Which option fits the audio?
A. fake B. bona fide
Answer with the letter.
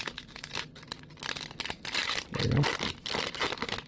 B